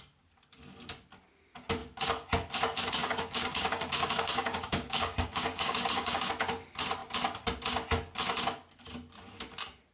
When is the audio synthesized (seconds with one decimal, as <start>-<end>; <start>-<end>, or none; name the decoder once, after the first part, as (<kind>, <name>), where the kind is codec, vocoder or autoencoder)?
3.0-6.3 (codec, DAC)